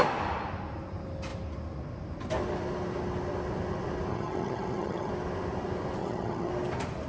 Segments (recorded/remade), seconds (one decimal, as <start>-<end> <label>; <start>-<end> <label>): 0.0-4.1 recorded; 4.1-5.1 remade; 5.1-6.0 recorded; 6.0-6.5 remade; 6.5-7.1 recorded